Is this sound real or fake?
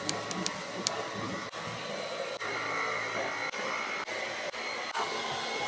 real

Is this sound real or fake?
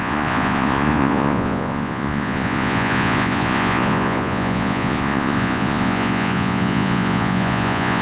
fake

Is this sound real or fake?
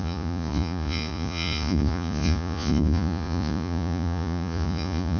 fake